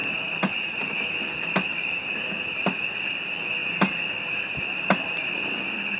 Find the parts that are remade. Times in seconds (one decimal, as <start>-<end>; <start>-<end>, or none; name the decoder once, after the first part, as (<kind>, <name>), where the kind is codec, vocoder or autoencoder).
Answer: 0.0-1.1 (vocoder, BigVGAN v2)

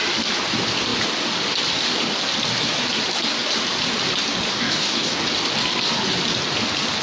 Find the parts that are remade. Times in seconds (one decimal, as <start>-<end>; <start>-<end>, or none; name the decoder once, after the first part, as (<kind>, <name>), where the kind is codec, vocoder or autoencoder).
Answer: 4.5-5.2 (codec, DAC)

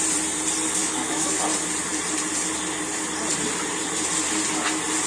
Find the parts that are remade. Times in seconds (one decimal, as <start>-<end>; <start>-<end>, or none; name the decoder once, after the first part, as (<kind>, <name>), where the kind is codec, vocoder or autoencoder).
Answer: 0.8-1.4 (autoencoder, DAC-VAE)

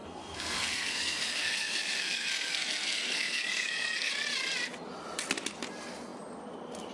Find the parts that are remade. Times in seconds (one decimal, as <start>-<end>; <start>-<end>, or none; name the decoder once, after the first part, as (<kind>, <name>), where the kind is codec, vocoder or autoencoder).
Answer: 0.0-4.1 (codec, SNAC)

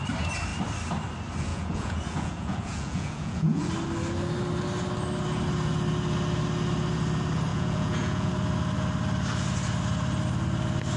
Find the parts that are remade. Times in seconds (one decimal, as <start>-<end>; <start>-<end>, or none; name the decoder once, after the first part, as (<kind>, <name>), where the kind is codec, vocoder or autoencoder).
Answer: 1.5-3.7 (vocoder, Vocos); 7.5-8.3